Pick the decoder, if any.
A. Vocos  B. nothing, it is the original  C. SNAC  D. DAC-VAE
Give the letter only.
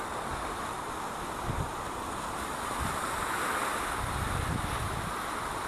B